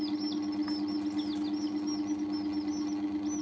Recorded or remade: recorded